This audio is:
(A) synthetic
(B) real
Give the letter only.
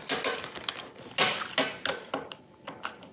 B